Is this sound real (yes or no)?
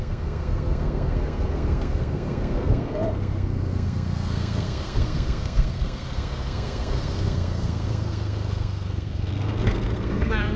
no